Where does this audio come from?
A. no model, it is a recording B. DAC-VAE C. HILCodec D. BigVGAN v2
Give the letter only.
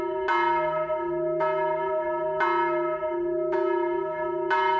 A